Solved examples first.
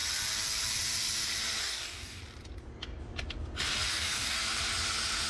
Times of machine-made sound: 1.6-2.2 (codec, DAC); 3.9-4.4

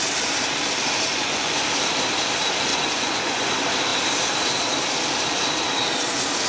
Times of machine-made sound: 1.1-1.6 (vocoder, Vocos); 2.7-3.5

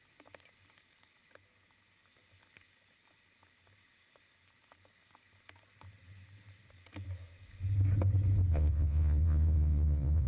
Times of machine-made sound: 8.5-10.3 (vocoder, Vocos)

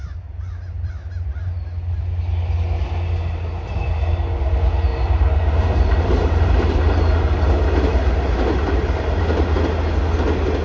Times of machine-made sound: 4.9-7.5 (vocoder, BigVGAN v2); 7.9-9.2